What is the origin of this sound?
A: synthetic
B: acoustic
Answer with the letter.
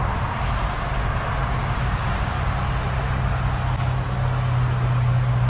B